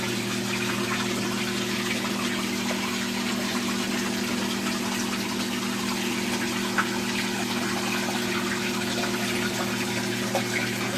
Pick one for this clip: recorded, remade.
recorded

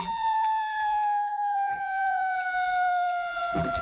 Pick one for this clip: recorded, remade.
remade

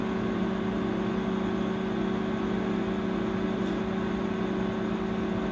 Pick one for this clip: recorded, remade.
recorded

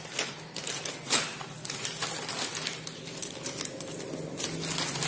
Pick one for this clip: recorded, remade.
recorded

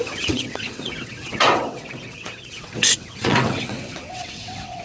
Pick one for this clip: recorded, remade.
remade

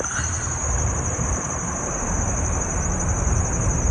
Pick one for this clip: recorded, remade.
remade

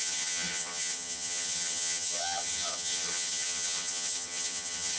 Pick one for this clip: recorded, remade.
remade